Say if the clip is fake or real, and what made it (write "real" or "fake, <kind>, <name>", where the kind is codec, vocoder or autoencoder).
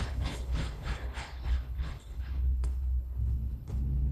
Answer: fake, codec, HILCodec